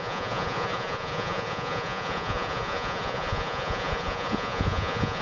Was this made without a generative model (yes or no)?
no